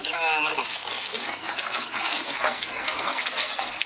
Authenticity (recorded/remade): remade